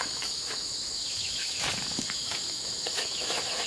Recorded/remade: remade